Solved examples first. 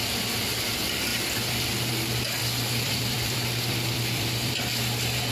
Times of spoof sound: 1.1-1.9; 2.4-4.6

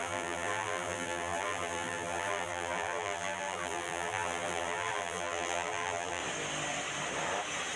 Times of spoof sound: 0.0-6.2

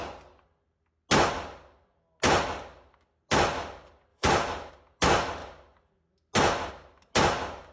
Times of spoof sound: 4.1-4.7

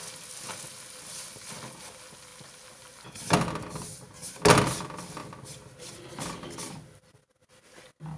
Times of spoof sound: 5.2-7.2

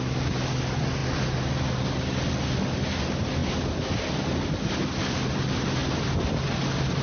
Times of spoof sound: 5.8-6.3

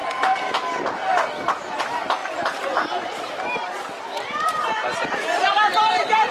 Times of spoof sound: 2.2-6.3

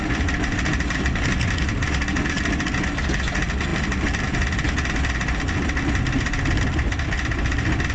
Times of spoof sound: none